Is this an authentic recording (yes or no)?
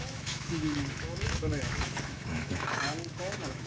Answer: no